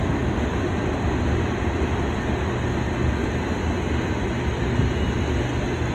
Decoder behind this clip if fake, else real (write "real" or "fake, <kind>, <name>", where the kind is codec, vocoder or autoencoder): real